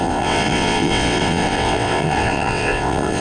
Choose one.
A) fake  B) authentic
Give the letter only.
A